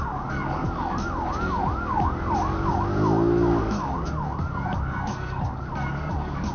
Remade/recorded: remade